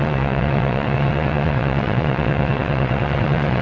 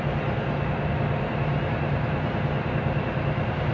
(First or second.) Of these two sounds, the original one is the second